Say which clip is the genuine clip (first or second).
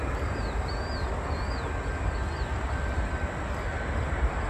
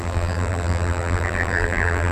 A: first